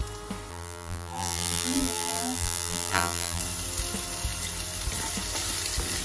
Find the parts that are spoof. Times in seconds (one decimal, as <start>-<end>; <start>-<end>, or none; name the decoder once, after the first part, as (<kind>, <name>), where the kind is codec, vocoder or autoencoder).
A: 0.5-3.4 (vocoder, BigVGAN v2)